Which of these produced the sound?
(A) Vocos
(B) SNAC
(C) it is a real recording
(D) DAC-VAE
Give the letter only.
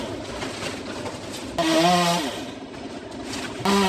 C